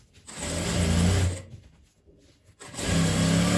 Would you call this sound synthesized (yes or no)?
no